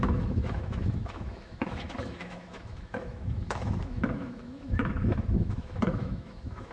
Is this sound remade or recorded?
remade